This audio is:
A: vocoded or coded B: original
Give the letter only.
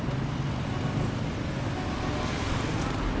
B